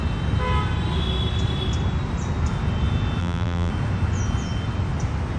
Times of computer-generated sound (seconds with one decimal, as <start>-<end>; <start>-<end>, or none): 3.2-3.7